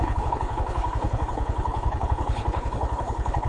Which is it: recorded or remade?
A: remade